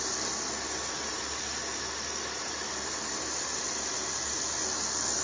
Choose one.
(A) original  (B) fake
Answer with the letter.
A